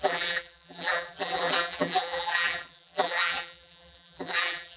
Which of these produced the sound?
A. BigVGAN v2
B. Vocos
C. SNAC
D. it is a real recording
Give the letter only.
A